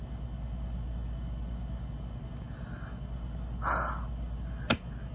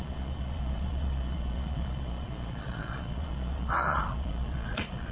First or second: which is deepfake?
second